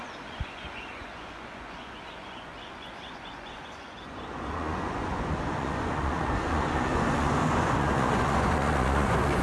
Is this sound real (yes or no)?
no